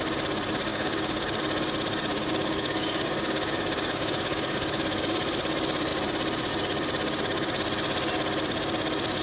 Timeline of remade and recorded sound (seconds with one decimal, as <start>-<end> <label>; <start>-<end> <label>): 0.0-0.7 recorded; 0.7-1.4 remade; 1.4-2.1 recorded; 2.1-5.2 remade; 5.2-9.2 recorded